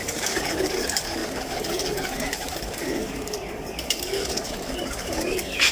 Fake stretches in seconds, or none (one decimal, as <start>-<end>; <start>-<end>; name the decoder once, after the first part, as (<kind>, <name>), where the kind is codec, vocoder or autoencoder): 0.0-5.7 (codec, DAC)